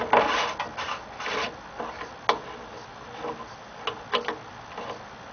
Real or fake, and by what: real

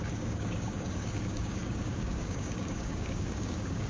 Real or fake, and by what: fake, codec, DAC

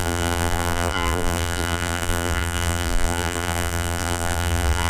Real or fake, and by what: fake, vocoder, BigVGAN v2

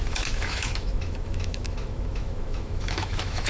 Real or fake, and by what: fake, autoencoder, DAC-VAE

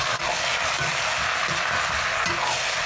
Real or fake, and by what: real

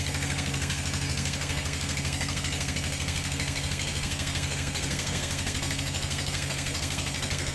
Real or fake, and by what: fake, codec, SNAC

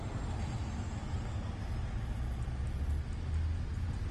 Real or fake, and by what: real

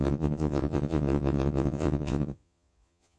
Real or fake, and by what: fake, vocoder, Vocos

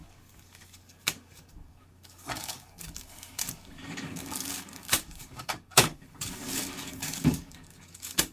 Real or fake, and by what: fake, codec, DAC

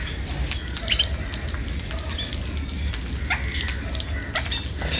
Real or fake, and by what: real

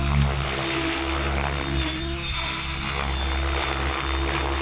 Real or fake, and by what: real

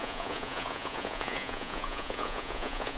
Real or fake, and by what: fake, vocoder, Vocos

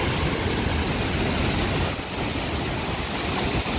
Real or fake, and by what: real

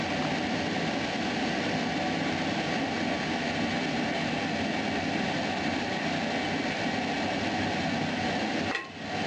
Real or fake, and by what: real